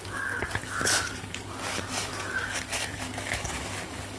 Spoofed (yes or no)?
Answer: yes